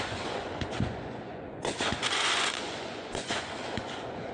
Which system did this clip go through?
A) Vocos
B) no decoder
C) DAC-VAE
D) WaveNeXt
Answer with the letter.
A